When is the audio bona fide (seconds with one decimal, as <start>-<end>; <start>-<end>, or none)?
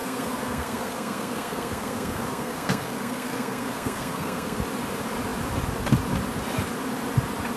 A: 4.6-7.6